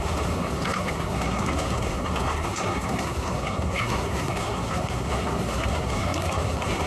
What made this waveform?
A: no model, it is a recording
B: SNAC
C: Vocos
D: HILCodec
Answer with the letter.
B